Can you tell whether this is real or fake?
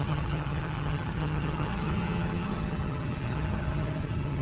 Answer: fake